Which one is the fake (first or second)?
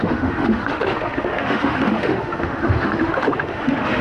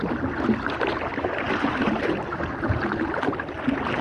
first